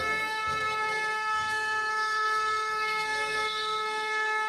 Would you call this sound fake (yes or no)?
yes